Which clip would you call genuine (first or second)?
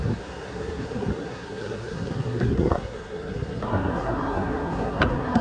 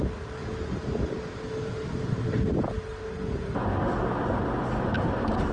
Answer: second